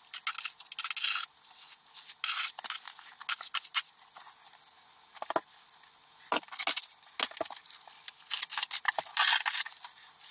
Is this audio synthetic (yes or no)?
no